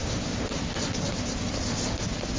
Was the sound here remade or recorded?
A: recorded